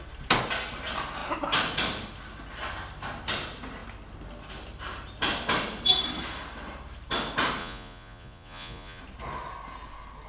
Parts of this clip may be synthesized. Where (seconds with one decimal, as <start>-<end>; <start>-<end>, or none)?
7.6-9.0